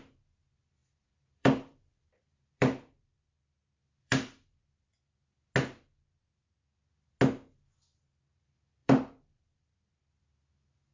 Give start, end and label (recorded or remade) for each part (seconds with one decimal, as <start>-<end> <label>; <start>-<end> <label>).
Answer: 0.0-0.8 recorded; 0.8-5.2 remade; 5.2-8.8 recorded; 8.8-10.0 remade; 10.0-10.9 recorded